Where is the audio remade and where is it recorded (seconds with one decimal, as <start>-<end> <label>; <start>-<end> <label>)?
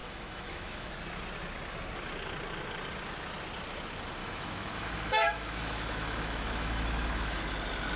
0.0-0.9 remade; 0.9-4.2 recorded; 4.2-7.4 remade; 7.4-8.0 recorded